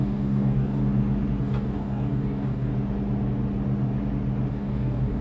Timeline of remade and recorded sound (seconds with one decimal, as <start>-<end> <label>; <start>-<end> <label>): 0.0-0.8 remade; 0.8-1.4 recorded; 1.4-2.7 remade; 2.7-4.5 recorded; 4.5-5.2 remade